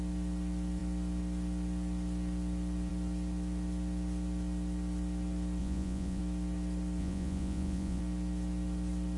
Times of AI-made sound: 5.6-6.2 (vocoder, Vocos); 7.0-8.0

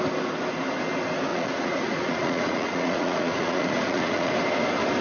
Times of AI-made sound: 1.3-4.3 (vocoder, Vocos)

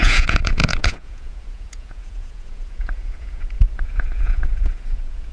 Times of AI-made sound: 0.0-5.3 (vocoder, Vocos)

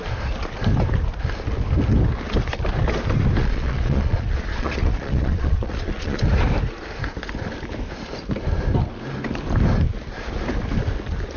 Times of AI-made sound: 3.4-6.2 (vocoder, Vocos)

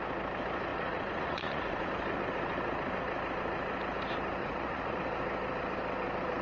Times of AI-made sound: 0.7-1.9 (vocoder, Vocos); 4.4-5.0

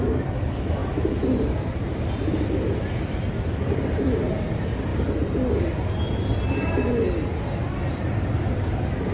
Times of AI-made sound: none